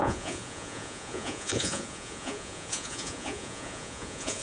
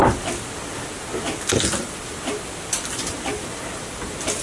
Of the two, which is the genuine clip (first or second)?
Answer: second